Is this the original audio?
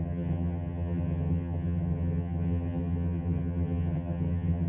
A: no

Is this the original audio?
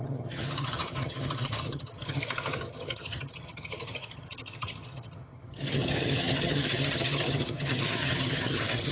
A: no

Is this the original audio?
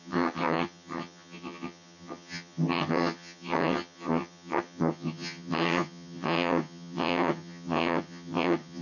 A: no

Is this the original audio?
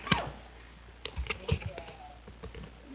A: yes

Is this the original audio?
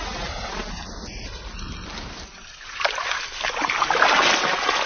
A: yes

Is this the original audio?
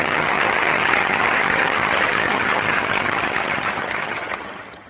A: no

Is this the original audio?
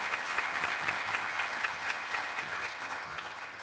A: no